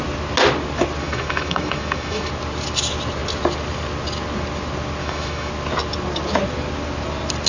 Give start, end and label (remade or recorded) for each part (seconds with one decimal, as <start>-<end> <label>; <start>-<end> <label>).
0.0-1.0 recorded; 1.0-2.3 remade; 2.3-5.0 recorded; 5.0-5.5 remade; 5.5-7.5 recorded